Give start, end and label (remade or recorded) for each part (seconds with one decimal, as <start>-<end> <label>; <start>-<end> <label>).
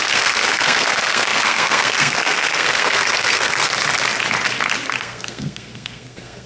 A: 0.0-3.7 remade; 3.7-5.0 recorded; 5.0-6.5 remade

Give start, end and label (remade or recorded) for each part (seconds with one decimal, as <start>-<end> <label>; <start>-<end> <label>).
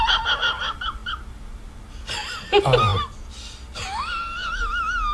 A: 0.0-5.1 recorded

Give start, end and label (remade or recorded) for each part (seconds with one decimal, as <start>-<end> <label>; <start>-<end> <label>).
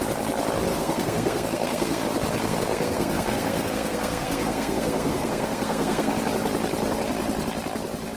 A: 0.0-0.7 recorded; 0.7-2.0 remade; 2.0-2.4 recorded; 2.4-6.1 remade; 6.1-8.2 recorded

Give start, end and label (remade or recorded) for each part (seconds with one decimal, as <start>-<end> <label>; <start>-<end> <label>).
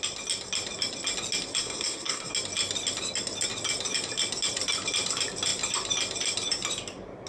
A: 0.0-1.6 recorded; 1.6-2.3 remade; 2.3-7.3 recorded